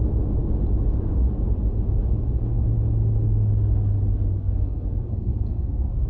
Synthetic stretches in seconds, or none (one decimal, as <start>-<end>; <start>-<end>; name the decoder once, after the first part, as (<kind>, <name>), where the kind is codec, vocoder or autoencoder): 4.4-6.1 (codec, SNAC)